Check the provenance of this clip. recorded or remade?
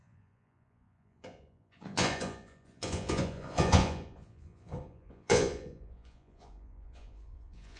remade